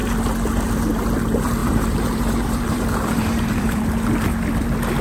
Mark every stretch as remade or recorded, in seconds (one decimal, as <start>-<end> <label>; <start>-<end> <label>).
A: 0.0-1.6 recorded; 1.6-3.8 remade; 3.8-5.0 recorded